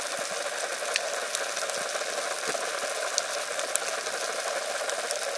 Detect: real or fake real